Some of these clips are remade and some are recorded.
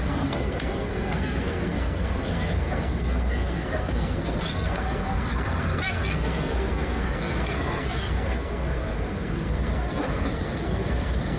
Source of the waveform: remade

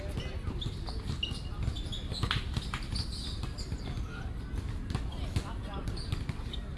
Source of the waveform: recorded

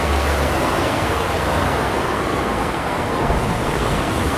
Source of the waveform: remade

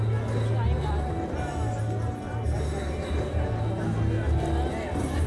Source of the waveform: recorded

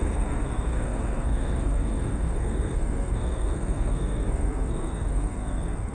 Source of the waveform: remade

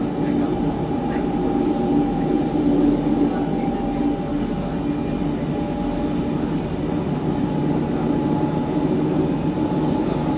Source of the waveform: recorded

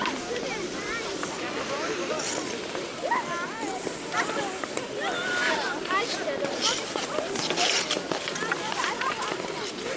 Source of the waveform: recorded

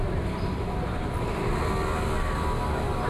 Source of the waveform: recorded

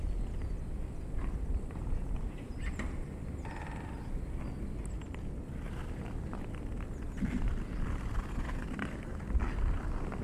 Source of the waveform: recorded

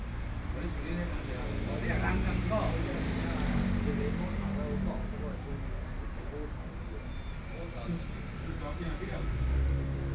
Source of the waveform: recorded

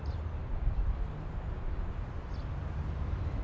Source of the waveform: recorded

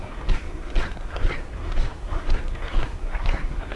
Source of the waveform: remade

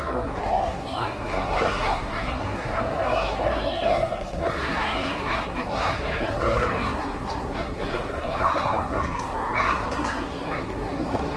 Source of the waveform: remade